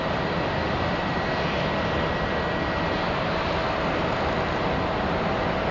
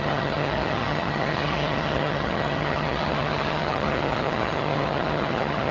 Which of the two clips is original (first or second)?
first